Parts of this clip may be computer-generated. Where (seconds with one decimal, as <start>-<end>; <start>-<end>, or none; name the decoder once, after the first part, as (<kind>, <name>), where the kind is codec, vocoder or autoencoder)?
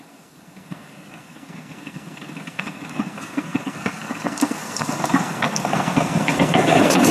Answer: 0.0-7.1 (codec, SNAC)